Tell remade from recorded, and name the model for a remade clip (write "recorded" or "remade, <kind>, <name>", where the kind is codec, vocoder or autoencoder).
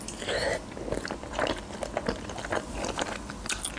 recorded